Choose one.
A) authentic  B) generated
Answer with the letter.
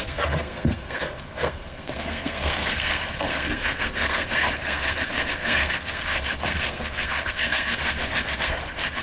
B